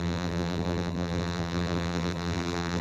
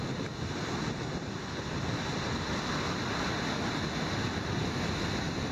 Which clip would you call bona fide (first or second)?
second